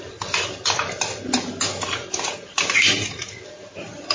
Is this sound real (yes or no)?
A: yes